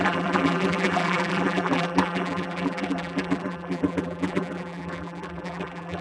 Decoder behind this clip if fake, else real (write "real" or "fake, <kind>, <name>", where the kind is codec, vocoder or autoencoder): fake, vocoder, BigVGAN v2